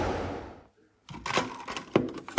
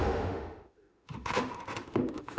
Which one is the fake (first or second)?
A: second